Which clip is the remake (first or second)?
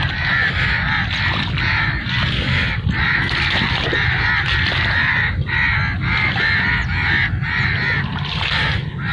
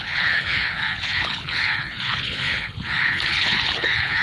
second